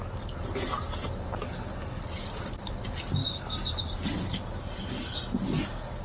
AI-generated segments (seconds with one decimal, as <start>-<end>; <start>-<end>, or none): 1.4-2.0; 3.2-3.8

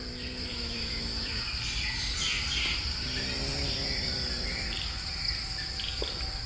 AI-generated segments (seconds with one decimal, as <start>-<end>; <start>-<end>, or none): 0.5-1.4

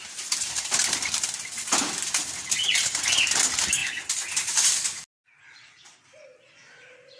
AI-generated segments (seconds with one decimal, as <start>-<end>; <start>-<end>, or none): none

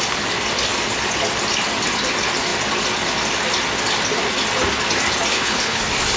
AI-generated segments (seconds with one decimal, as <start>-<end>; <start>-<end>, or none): 5.3-5.8

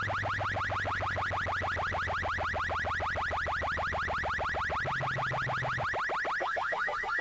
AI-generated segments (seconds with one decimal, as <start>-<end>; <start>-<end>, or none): 6.4-7.2

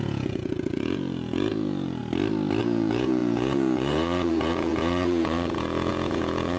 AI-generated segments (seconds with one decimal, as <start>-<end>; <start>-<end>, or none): 0.0-2.0; 2.6-6.6

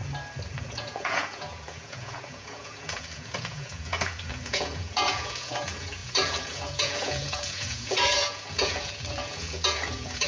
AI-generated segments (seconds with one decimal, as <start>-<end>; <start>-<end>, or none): 0.6-10.3

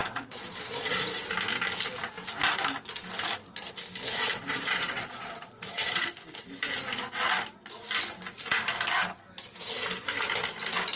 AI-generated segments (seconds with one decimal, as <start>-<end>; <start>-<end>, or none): 0.0-1.0; 4.3-6.1